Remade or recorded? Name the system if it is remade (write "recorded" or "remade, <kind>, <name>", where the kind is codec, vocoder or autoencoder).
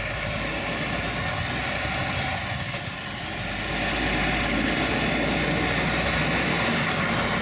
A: recorded